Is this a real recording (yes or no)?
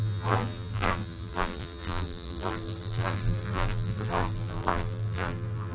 no